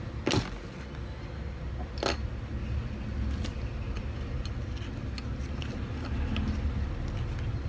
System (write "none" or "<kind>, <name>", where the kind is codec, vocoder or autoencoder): none